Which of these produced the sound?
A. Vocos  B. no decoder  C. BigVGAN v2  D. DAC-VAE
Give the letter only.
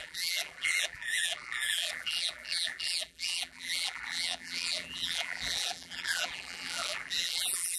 C